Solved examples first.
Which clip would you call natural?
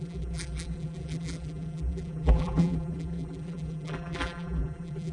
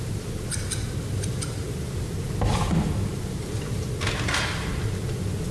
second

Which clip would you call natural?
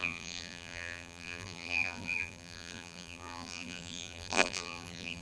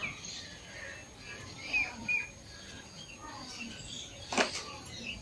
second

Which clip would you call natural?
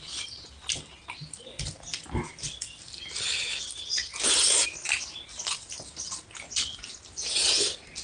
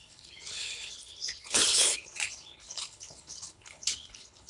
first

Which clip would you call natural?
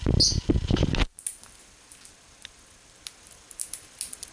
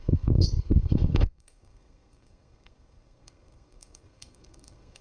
first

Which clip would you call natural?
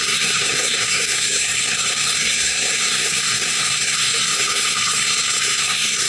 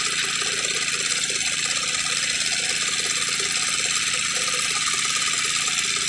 second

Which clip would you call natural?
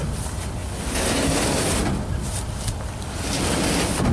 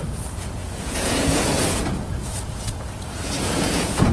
first